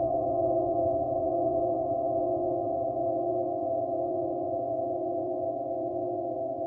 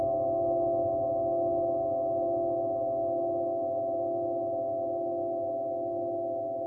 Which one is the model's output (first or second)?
first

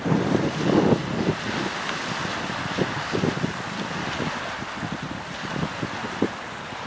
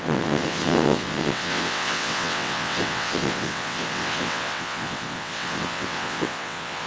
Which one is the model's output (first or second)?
second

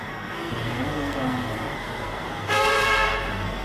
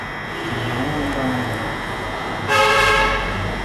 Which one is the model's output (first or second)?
first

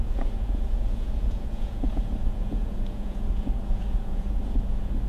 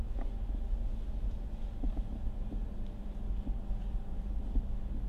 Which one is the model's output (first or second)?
first